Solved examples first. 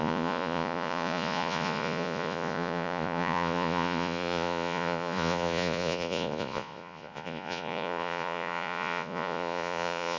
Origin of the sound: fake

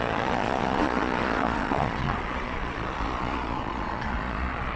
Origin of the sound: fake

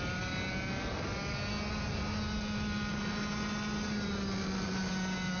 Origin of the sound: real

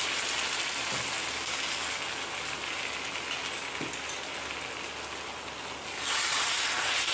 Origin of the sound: real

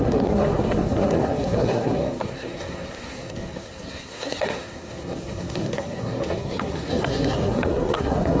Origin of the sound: fake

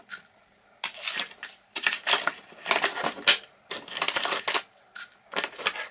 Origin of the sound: real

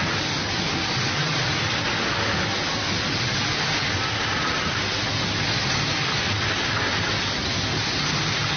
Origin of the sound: real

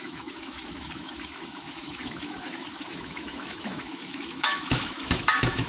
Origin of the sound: fake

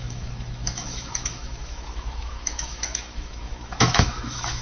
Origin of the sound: fake